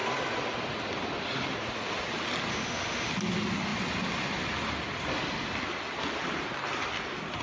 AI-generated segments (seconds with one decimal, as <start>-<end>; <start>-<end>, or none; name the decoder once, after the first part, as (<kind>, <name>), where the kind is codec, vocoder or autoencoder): 2.5-3.1 (autoencoder, DAC-VAE)